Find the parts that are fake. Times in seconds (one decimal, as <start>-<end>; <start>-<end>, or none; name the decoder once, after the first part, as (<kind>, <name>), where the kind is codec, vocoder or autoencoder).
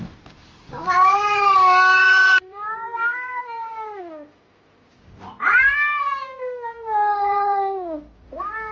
none